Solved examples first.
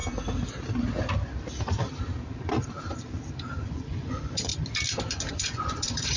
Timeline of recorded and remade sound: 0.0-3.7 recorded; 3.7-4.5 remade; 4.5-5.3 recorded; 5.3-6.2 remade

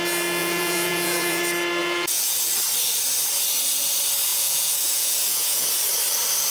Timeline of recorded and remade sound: 0.0-0.4 recorded; 0.4-1.4 remade; 1.4-1.8 recorded; 1.8-2.5 remade; 2.5-4.3 recorded; 4.3-5.7 remade; 5.7-6.5 recorded

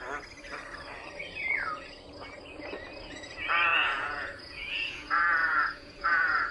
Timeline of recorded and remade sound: 0.0-3.7 recorded; 3.7-6.5 remade

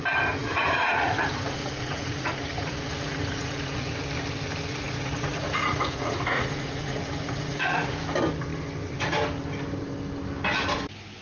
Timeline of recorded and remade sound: 0.0-0.4 recorded; 0.4-4.0 remade; 4.0-4.7 recorded; 4.7-8.0 remade; 8.0-11.2 recorded

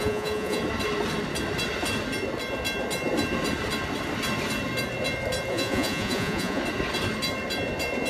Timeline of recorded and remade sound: 0.0-0.6 remade; 0.6-5.5 recorded; 5.5-6.6 remade; 6.6-8.1 recorded

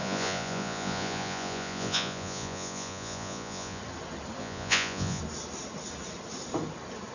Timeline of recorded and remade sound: 0.0-3.8 remade; 3.8-4.4 recorded; 4.4-5.2 remade; 5.2-7.1 recorded